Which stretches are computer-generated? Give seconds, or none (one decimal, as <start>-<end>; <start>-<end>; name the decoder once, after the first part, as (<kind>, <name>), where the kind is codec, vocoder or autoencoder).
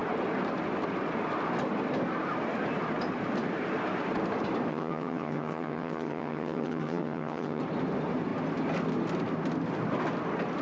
4.7-7.6 (vocoder, HiFi-GAN)